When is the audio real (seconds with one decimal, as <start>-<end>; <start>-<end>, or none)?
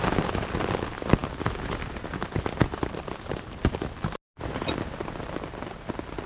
0.0-6.3